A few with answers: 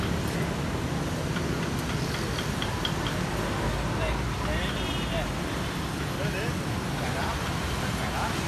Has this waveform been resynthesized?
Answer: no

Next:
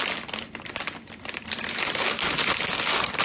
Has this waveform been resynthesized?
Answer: no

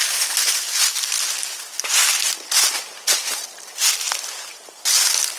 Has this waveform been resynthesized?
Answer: no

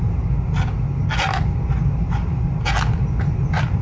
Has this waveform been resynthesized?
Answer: no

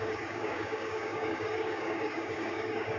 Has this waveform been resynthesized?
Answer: yes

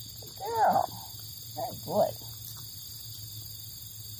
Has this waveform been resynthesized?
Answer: no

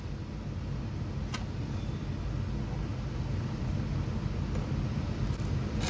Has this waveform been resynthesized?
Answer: no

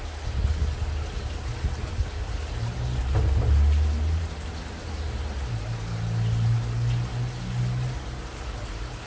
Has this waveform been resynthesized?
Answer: no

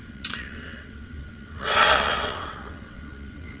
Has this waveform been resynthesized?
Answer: yes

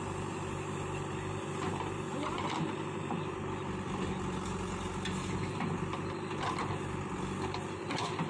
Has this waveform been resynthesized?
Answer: no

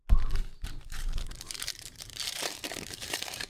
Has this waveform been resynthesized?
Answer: yes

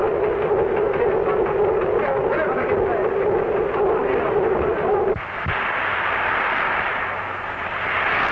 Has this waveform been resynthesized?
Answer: no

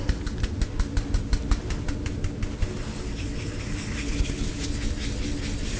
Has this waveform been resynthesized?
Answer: no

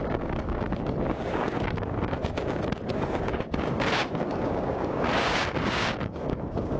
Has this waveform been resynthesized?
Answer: yes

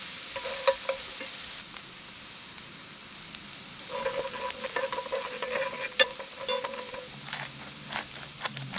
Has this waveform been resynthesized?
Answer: no